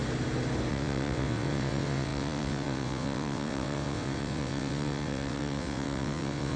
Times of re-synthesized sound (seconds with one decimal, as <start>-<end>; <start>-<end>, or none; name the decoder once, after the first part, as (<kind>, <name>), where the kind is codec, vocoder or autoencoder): 0.7-6.6 (vocoder, WaveNeXt)